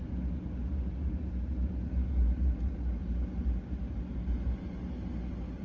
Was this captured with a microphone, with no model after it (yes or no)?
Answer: yes